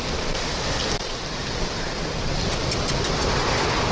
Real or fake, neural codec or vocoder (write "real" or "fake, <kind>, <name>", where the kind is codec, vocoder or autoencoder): real